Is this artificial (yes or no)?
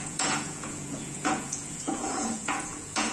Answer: yes